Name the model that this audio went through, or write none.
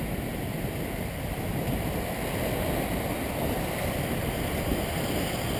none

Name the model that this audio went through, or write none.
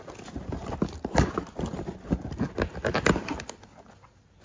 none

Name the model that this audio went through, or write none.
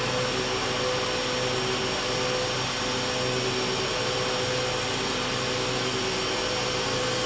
none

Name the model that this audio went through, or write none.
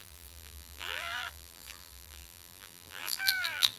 vocoder, BigVGAN v2